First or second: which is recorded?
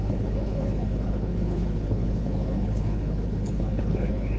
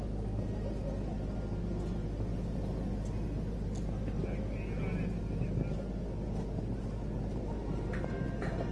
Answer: second